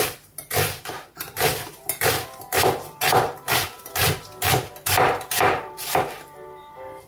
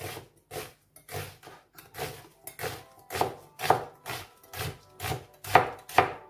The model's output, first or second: first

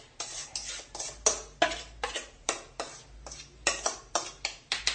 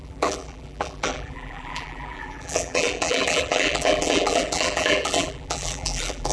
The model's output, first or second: second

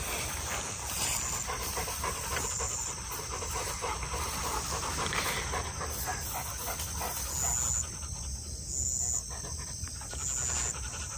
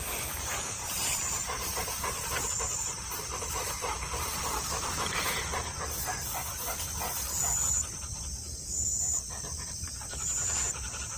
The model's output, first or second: second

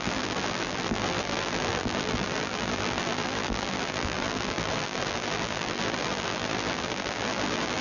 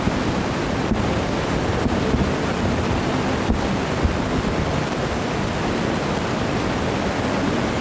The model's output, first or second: first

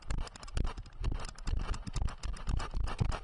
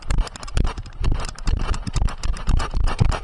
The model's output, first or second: second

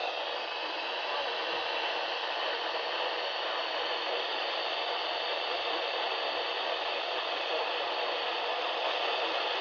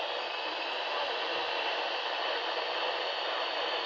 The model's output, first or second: second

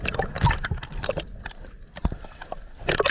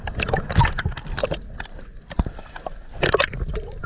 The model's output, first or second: first